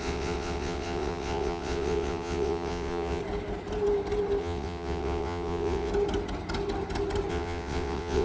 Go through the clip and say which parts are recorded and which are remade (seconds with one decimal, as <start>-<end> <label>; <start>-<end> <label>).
0.0-3.2 remade; 3.2-4.4 recorded; 4.4-5.9 remade; 5.9-7.3 recorded; 7.3-8.2 remade